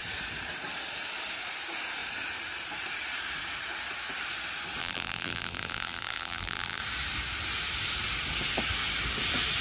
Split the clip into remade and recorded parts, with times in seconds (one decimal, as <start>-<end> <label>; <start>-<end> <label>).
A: 0.0-4.8 recorded; 4.8-6.8 remade; 6.8-9.6 recorded